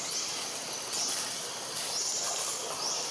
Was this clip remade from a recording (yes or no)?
no